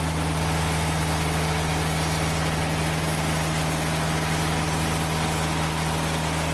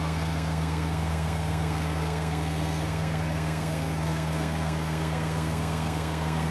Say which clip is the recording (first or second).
first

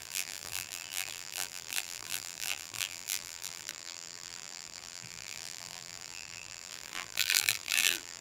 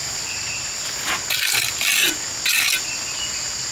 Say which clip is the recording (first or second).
second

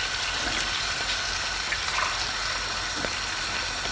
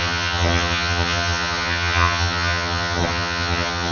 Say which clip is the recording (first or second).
first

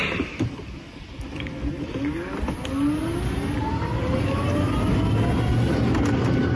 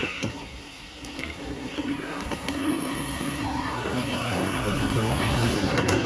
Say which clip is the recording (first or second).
first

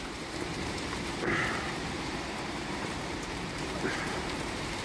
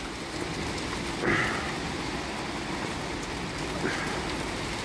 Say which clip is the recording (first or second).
second